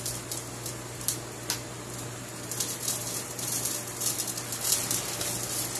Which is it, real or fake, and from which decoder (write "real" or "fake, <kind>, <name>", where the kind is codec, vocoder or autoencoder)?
real